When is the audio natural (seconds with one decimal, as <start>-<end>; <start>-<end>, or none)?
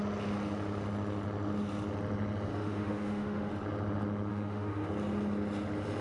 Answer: 0.0-2.5; 3.5-4.3; 4.9-6.0